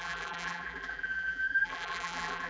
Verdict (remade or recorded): remade